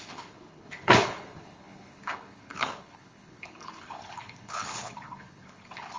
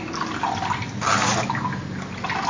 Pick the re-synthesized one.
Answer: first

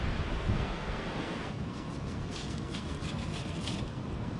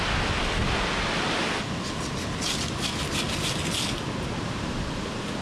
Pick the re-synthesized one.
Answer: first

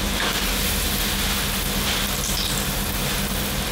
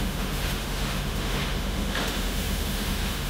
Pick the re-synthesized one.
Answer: second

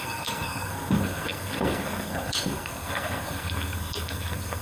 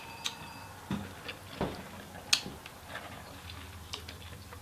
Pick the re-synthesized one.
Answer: first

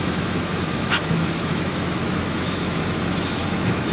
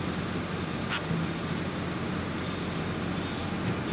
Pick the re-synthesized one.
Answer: first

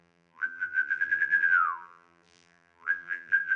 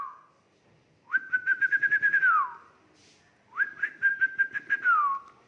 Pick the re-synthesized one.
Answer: first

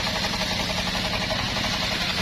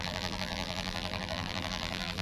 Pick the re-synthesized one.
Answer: second